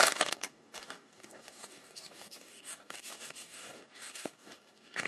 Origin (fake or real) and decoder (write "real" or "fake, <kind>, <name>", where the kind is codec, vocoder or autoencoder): fake, codec, DAC